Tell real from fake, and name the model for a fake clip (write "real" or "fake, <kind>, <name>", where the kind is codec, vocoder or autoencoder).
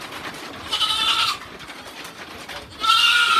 fake, vocoder, BigVGAN v2